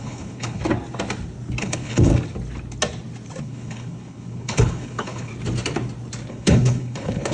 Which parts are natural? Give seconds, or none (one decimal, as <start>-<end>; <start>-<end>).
0.6-1.6; 2.1-3.4; 5.3-6.3